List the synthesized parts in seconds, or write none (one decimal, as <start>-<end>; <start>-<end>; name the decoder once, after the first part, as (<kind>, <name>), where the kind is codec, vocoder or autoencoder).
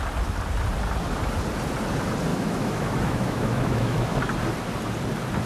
2.3-4.2 (autoencoder, DAC-VAE)